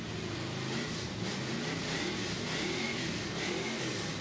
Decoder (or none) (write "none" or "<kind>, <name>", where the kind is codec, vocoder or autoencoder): none